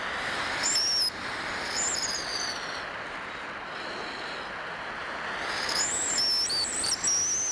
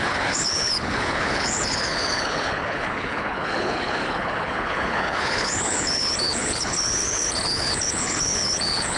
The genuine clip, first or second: first